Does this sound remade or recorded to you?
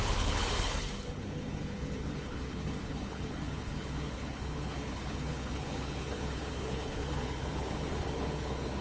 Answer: remade